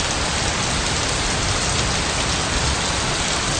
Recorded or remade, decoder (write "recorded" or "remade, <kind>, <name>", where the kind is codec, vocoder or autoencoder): recorded